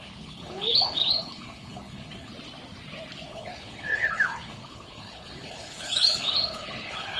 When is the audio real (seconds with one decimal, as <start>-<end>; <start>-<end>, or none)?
2.3-3.3